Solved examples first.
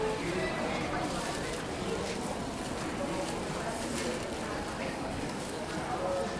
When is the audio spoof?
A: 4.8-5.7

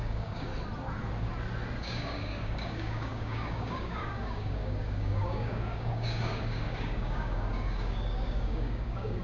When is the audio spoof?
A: 0.0-0.5; 1.8-9.2

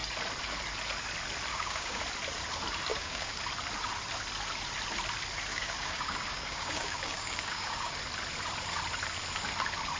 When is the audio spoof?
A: 1.5-2.0; 2.9-3.4; 5.5-8.0

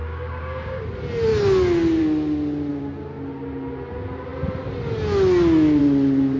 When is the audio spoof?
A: 0.0-0.8

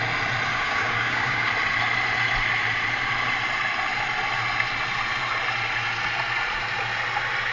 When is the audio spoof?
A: 0.5-1.5

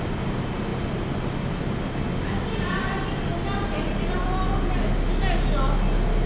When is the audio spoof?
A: none